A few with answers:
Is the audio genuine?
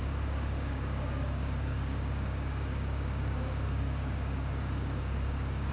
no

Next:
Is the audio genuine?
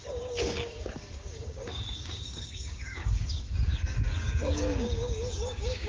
no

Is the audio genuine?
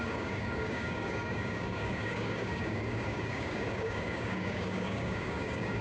no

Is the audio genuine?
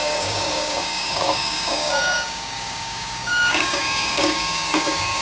no